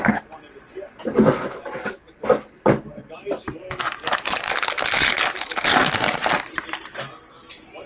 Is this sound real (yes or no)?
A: yes